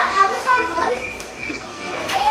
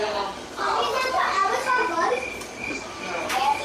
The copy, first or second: first